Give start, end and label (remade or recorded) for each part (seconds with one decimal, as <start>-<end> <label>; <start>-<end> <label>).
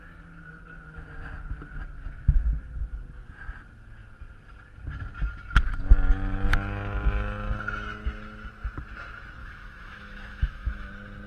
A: 0.0-9.4 recorded; 9.4-10.9 remade; 10.9-11.3 recorded